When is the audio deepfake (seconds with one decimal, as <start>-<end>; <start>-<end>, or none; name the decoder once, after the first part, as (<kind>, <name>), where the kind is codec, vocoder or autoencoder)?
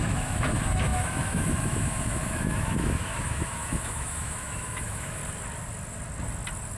0.0-5.2 (autoencoder, DAC-VAE)